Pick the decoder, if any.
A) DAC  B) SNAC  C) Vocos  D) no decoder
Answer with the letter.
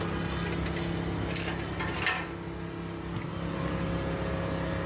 D